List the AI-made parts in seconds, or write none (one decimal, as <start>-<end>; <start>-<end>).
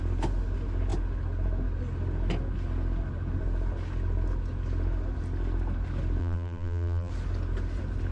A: 6.2-7.1